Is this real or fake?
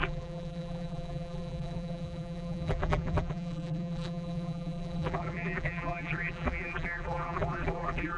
fake